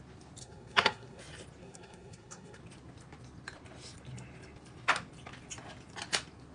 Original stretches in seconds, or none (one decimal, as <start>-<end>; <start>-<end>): 0.0-0.4; 1.2-1.6; 2.6-6.5